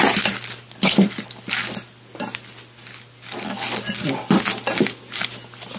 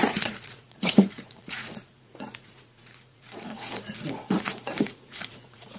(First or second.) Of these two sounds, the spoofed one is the second